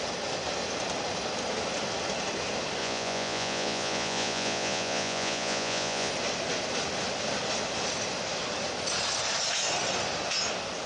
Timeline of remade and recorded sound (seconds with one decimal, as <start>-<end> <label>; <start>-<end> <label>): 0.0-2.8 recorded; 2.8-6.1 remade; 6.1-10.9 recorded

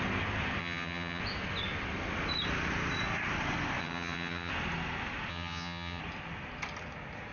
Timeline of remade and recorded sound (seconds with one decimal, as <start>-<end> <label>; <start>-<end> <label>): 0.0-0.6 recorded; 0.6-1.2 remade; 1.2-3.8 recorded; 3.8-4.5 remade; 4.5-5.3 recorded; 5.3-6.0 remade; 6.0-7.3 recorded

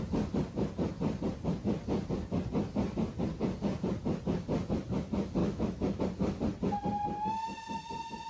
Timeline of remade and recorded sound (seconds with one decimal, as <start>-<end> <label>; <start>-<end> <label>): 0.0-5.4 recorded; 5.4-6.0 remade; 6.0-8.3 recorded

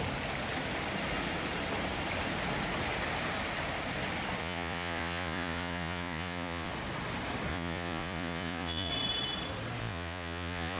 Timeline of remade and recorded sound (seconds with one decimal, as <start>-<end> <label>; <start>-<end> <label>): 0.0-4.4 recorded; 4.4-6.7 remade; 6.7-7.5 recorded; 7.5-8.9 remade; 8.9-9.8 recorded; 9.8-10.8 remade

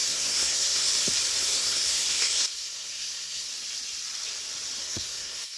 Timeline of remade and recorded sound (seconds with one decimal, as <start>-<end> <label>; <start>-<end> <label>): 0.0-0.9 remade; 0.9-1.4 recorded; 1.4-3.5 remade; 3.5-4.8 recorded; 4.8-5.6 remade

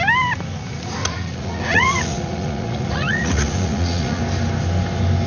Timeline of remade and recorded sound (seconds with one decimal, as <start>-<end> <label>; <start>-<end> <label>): 0.0-1.0 recorded; 1.0-4.2 remade; 4.2-5.3 recorded